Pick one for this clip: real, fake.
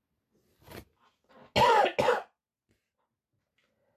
real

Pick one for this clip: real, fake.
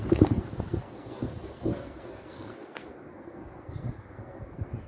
fake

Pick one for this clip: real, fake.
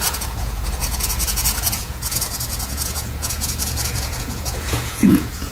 fake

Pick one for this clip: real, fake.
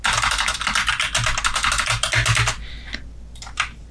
real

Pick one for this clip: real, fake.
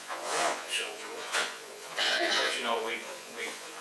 fake